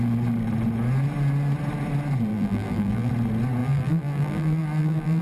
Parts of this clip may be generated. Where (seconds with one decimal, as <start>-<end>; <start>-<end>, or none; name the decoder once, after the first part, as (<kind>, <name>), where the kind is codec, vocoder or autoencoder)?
2.3-3.1 (vocoder, BigVGAN v2); 3.6-5.2